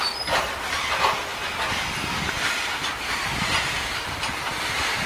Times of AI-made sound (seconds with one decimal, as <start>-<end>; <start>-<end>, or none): none